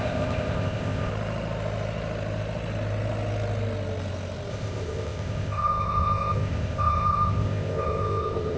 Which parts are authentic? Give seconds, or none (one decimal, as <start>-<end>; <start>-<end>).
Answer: 1.1-4.5